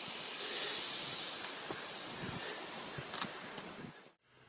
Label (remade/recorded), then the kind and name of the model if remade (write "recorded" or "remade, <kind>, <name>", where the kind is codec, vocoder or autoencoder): recorded